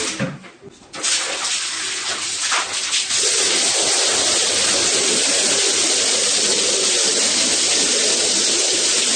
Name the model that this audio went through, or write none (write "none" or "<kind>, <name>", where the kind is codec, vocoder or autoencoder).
none